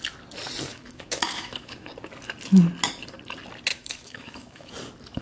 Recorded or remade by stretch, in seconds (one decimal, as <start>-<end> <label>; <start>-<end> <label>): 0.0-0.7 recorded; 0.7-1.9 remade; 1.9-3.7 recorded; 3.7-4.7 remade; 4.7-5.2 recorded